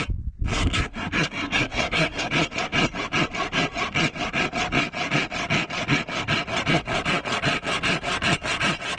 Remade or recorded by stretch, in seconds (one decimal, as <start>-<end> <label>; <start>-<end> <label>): 0.0-0.5 recorded; 0.5-2.3 remade; 2.3-9.0 recorded